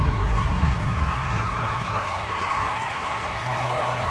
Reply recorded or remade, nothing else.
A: remade